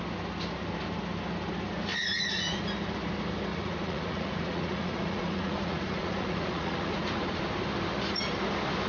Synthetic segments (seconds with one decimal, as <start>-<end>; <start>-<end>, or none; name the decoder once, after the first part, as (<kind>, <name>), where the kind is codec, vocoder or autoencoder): 1.9-2.6 (vocoder, Vocos); 3.5-7.4